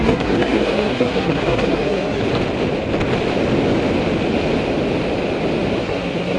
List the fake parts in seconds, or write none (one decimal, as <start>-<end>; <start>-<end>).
0.0-2.2; 5.8-6.4